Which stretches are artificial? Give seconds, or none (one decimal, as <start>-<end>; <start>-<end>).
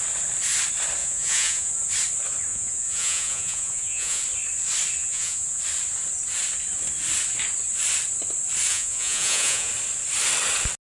1.0-1.7; 2.5-4.2; 5.0-5.6; 8.7-9.7